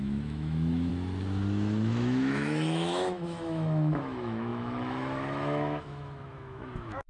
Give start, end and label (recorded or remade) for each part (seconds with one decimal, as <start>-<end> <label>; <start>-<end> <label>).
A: 0.0-0.9 remade; 0.9-1.9 recorded; 1.9-7.1 remade